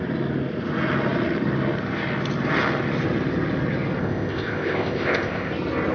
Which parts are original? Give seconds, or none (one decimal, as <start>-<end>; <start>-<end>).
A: 0.0-4.0; 5.5-5.9